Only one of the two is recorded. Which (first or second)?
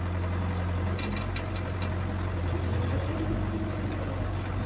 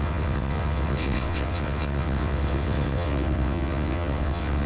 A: first